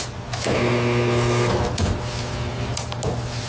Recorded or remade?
recorded